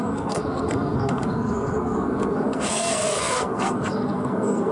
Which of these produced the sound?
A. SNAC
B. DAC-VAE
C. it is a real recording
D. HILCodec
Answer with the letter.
A